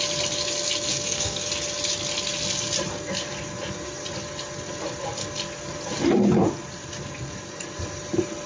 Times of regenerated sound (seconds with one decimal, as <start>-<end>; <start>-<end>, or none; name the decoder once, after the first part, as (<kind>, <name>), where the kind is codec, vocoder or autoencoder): 0.9-1.5 (codec, SNAC)